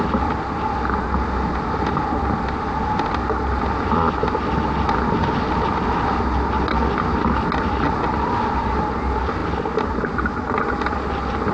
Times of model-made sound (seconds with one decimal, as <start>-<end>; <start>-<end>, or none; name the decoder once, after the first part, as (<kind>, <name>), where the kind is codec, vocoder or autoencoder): none